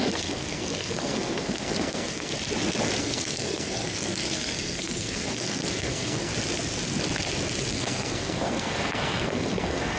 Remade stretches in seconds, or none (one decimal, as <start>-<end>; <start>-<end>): 0.0-2.3; 3.0-6.3; 7.7-10.0